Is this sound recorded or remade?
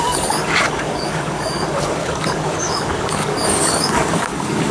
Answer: remade